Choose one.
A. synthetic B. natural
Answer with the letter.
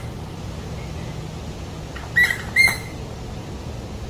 B